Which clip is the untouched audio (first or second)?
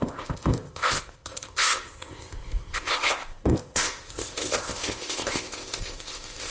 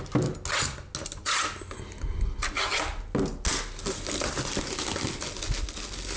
second